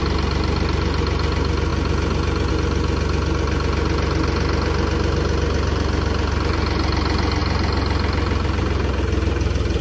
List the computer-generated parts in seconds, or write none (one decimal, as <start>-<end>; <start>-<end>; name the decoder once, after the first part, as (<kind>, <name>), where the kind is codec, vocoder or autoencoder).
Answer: none

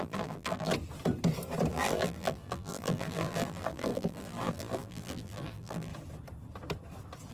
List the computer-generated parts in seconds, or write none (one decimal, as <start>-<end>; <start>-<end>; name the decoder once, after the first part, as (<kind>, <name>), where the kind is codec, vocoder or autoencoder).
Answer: 0.0-0.7 (vocoder, BigVGAN v2); 1.7-5.9

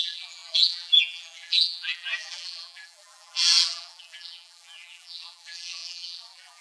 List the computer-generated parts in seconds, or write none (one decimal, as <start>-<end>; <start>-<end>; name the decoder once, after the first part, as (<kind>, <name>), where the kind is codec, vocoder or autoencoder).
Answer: 0.0-6.6 (vocoder, BigVGAN v2)

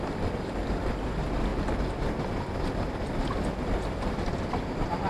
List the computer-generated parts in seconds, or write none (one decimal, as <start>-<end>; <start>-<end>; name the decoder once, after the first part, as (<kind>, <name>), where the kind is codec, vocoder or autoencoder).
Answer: none

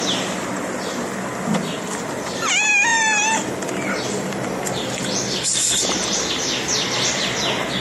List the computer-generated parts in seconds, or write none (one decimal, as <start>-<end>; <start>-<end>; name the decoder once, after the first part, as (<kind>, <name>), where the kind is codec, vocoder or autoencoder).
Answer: 2.9-6.3 (vocoder, BigVGAN v2)

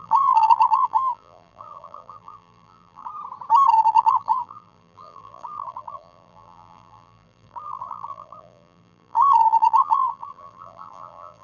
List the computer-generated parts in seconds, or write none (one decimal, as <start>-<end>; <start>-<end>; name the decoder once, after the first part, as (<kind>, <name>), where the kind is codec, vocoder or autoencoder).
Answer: 0.0-3.1 (vocoder, BigVGAN v2); 3.7-11.4

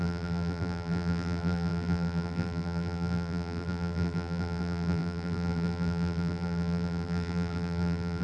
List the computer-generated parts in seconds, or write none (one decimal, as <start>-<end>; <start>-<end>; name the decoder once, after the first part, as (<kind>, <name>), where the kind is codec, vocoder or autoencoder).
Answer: 0.0-8.2 (vocoder, BigVGAN v2)

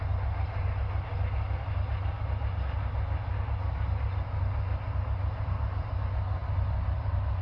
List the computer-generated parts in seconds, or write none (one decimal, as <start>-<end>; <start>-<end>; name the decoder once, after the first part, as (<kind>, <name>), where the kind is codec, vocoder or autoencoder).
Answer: none